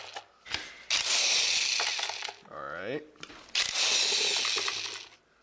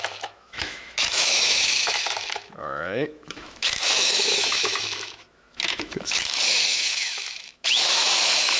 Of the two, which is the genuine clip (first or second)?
first